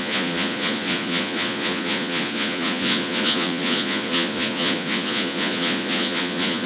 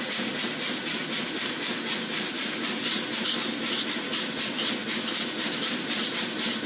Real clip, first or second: second